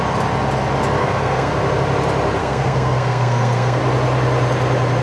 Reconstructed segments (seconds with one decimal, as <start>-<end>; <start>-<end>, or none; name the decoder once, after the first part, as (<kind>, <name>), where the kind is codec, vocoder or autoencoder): 1.0-1.5 (codec, SNAC); 2.4-3.8

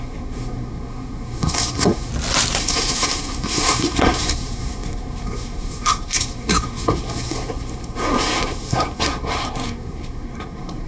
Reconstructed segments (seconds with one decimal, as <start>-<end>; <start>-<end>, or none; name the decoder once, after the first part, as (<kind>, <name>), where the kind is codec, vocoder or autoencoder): 0.0-2.1 (codec, SNAC); 2.6-10.9

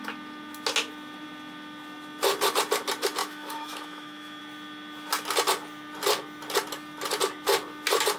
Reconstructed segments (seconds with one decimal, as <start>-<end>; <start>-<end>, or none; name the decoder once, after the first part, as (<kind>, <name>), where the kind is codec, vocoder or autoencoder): 3.2-4.4 (autoencoder, DAC-VAE)

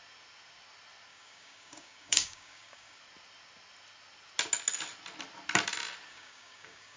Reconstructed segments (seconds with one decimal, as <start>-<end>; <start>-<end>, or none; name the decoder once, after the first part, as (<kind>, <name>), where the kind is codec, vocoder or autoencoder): 1.1-3.0 (codec, DAC); 6.1-7.0

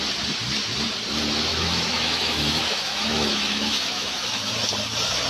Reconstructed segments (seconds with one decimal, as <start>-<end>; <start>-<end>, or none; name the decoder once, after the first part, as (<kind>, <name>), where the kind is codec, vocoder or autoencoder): 1.5-4.5 (autoencoder, DAC-VAE)

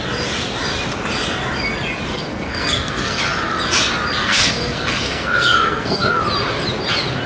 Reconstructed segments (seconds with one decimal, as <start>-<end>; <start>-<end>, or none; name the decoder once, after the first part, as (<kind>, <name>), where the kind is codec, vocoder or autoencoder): 2.1-3.2 (codec, SNAC); 4.2-6.2

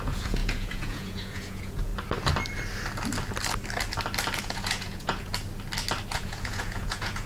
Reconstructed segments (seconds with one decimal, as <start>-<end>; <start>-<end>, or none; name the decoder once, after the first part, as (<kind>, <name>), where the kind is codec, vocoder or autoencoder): 0.0-1.9 (vocoder, Vocos); 4.4-5.3; 6.1-7.3